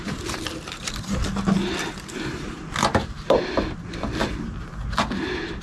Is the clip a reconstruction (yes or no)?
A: no